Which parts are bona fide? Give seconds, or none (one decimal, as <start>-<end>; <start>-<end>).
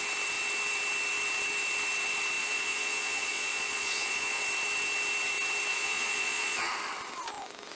0.0-2.4; 4.4-5.7; 6.7-7.7